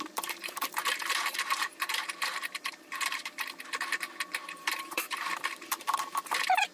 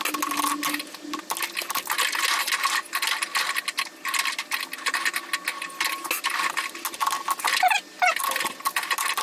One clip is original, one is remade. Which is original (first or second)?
second